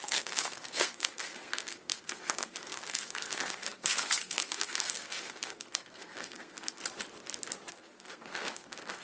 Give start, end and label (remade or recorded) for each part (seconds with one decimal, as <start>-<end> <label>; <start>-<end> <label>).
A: 0.0-6.8 remade; 6.8-7.7 recorded; 7.7-9.0 remade